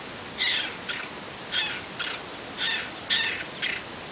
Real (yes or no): yes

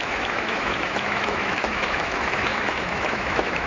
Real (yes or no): no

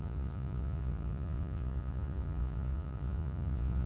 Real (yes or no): no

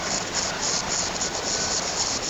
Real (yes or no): yes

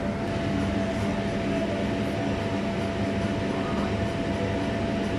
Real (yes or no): yes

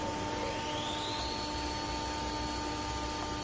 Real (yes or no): yes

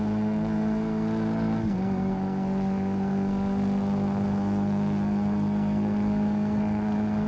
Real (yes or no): no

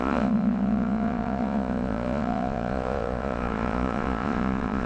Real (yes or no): no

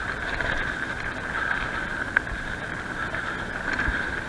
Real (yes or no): yes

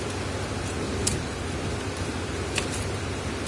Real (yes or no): yes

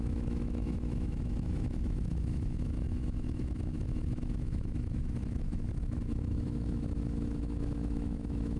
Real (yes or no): no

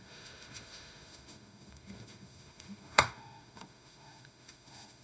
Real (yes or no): no